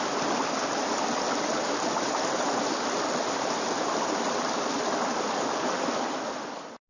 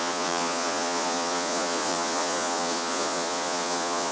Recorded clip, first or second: first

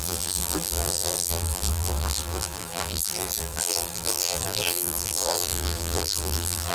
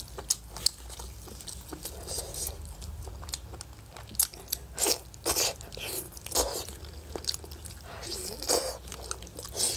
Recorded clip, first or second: second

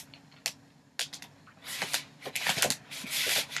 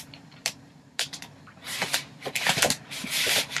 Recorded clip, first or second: first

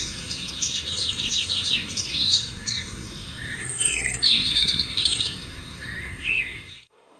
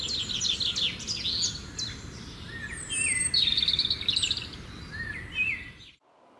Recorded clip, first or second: second